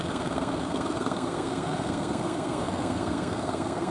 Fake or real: fake